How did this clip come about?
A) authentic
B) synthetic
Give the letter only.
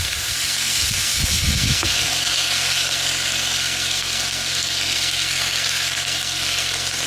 B